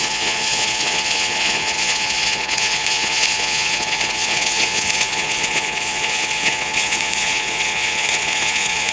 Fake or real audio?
fake